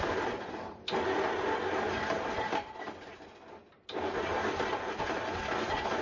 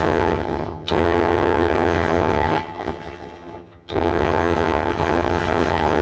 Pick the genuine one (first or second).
first